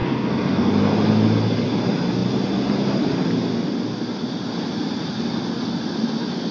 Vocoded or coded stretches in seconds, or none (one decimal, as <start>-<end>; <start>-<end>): 0.0-0.7